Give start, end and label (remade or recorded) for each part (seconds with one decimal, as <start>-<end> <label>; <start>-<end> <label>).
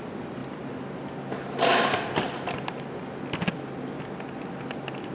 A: 0.0-5.1 recorded